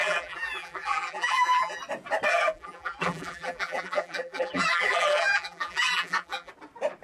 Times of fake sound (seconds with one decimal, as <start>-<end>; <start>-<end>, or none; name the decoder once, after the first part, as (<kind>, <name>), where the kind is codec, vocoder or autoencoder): 0.0-1.8 (vocoder, BigVGAN v2); 2.3-6.5